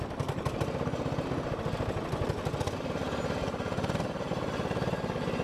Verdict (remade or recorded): recorded